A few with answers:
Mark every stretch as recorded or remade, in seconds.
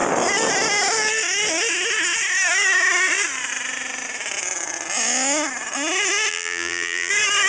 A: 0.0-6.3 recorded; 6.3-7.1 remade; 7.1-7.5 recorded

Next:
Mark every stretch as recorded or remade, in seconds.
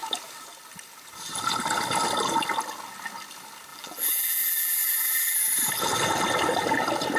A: 0.0-3.7 recorded; 3.7-5.5 remade; 5.5-7.2 recorded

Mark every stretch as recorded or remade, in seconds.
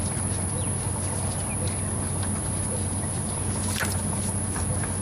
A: 0.0-5.0 recorded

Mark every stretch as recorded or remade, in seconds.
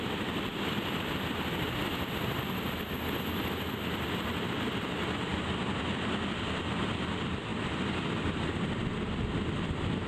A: 0.0-10.1 recorded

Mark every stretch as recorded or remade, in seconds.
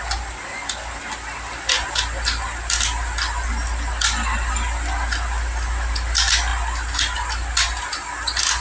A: 0.0-8.6 recorded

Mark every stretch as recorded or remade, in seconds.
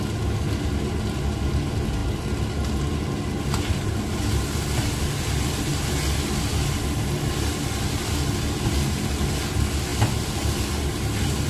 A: 0.0-11.5 recorded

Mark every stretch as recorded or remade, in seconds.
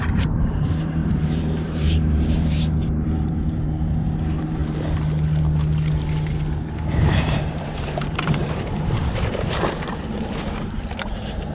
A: 0.0-4.6 remade; 4.6-6.6 recorded; 6.6-11.5 remade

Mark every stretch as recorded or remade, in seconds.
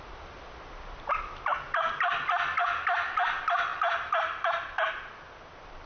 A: 0.0-5.9 recorded